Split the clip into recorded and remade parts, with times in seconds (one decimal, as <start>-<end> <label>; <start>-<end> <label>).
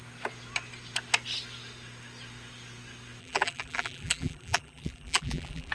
0.0-3.2 recorded; 3.2-5.7 remade